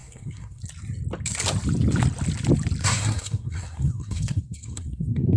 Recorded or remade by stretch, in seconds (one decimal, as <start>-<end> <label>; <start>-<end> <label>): 0.0-0.6 remade; 0.6-2.8 recorded; 2.8-5.4 remade